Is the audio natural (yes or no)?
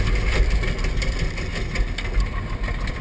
yes